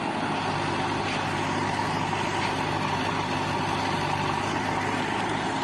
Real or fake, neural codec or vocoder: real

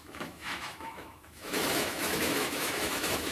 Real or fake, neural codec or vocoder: fake, autoencoder, DAC-VAE